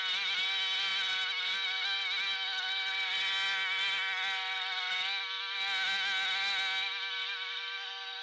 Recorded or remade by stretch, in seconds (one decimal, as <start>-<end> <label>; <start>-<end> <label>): 0.0-8.2 recorded